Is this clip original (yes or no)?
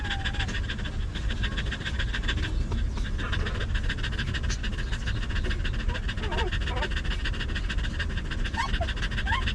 yes